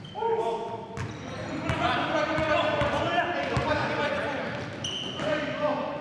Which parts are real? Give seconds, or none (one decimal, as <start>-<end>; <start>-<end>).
0.0-6.0